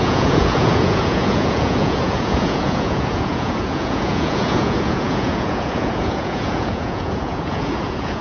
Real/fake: fake